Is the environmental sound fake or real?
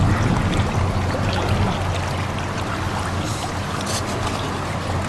real